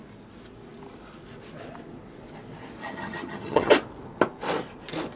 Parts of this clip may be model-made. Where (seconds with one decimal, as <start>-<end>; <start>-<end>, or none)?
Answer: 2.8-3.7